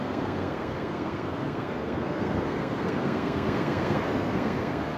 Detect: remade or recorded remade